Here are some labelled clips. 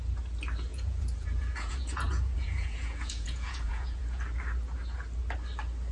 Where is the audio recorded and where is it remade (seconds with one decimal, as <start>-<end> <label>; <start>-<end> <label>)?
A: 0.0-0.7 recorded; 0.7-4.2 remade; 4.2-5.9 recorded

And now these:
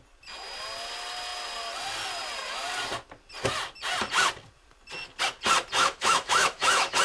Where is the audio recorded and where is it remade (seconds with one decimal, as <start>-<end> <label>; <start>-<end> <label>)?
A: 0.0-5.8 recorded; 5.8-7.0 remade

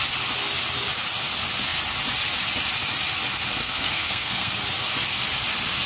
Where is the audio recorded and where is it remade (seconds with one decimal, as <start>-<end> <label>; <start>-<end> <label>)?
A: 0.0-3.6 recorded; 3.6-4.6 remade; 4.6-5.9 recorded

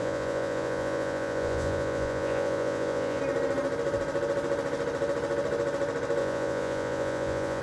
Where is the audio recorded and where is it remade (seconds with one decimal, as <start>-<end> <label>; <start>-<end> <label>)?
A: 0.0-3.2 remade; 3.2-6.2 recorded; 6.2-7.6 remade

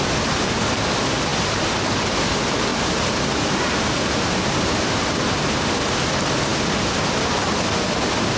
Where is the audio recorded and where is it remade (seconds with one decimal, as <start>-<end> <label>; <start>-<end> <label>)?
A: 0.0-2.7 recorded; 2.7-5.6 remade; 5.6-8.4 recorded

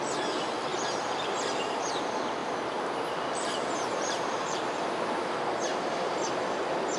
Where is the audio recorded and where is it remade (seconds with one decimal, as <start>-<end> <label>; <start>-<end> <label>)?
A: 0.0-2.4 recorded; 2.4-4.6 remade; 4.6-5.7 recorded; 5.7-6.3 remade; 6.3-7.0 recorded